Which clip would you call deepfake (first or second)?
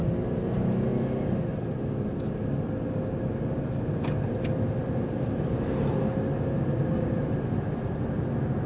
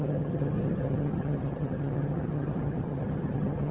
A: second